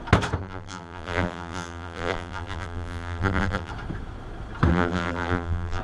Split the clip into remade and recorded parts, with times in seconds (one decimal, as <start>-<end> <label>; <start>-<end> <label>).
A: 0.0-0.4 recorded; 0.4-3.7 remade; 3.7-4.7 recorded; 4.7-5.8 remade